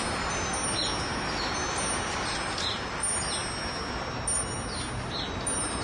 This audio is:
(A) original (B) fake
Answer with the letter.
A